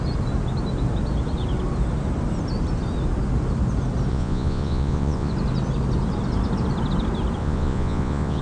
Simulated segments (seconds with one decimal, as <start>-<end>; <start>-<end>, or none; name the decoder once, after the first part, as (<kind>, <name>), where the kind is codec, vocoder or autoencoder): 4.1-5.3 (vocoder, Vocos); 7.4-8.4